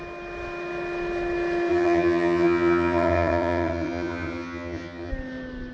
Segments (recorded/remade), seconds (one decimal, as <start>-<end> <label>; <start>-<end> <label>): 0.0-1.7 recorded; 1.7-5.1 remade; 5.1-5.7 recorded